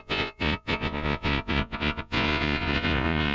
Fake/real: fake